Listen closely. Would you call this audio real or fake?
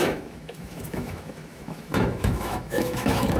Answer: fake